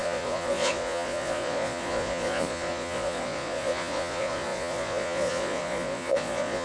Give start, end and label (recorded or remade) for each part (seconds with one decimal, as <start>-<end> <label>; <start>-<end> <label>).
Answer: 0.0-6.6 remade